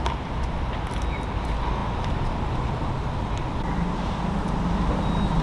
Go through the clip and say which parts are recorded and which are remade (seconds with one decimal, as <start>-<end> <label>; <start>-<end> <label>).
0.0-5.4 recorded